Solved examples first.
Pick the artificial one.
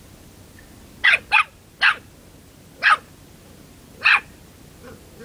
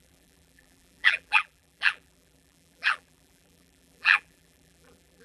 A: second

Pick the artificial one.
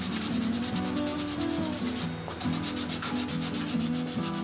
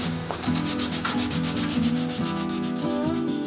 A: second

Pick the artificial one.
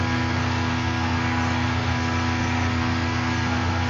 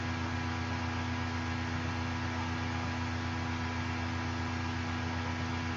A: first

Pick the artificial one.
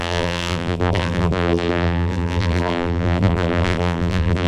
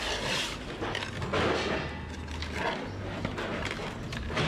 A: first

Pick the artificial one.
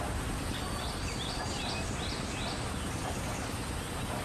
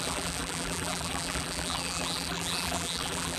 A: second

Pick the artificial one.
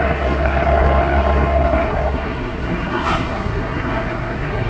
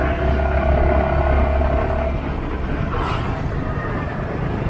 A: first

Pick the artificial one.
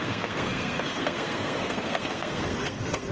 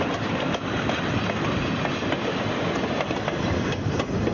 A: first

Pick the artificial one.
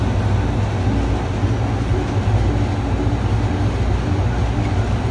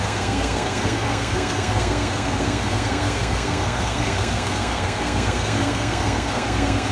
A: second